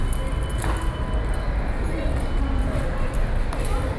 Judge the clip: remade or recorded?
recorded